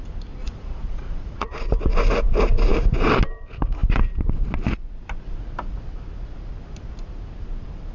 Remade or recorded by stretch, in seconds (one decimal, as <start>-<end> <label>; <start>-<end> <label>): 0.0-0.4 recorded; 0.4-1.6 remade; 1.6-7.9 recorded